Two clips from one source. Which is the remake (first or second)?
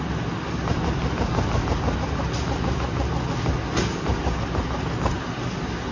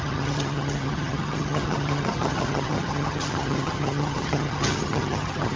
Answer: second